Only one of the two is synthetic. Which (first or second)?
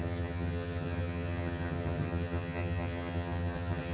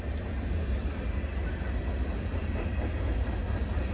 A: first